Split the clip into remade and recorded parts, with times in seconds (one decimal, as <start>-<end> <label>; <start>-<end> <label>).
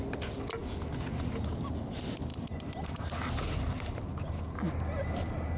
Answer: 0.0-5.6 recorded